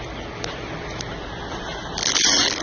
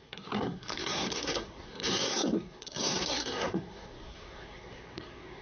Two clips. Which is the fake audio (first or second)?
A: second